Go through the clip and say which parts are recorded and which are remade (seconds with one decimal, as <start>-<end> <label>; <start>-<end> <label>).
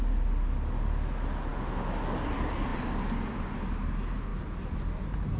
0.0-4.3 recorded; 4.3-5.0 remade; 5.0-5.4 recorded